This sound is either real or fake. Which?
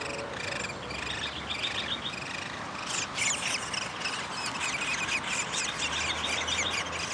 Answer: real